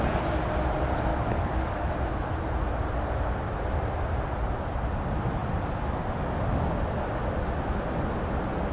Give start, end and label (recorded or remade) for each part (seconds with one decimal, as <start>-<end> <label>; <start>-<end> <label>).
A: 0.0-1.1 recorded; 1.1-1.9 remade; 1.9-8.7 recorded